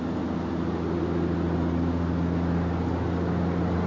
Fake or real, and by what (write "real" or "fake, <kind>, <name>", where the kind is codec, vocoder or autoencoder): real